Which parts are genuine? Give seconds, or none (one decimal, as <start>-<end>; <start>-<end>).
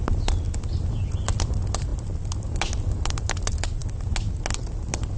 0.0-5.2